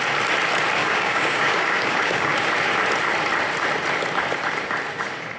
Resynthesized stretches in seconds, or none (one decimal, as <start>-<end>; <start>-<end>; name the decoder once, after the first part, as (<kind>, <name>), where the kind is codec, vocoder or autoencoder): 0.8-2.5 (codec, DAC)